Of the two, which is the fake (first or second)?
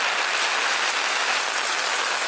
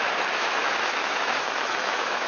second